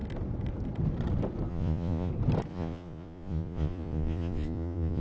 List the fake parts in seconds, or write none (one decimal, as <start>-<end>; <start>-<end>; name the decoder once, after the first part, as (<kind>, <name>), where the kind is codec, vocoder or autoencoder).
1.5-2.1 (vocoder, Vocos); 2.5-5.0